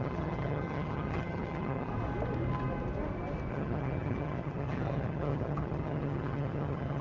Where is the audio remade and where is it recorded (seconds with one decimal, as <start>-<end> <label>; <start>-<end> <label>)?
0.0-1.9 remade; 1.9-3.5 recorded; 3.5-7.0 remade